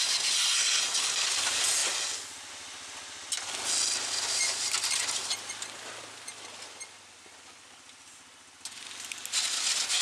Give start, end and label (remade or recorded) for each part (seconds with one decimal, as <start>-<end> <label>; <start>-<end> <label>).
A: 0.0-10.0 recorded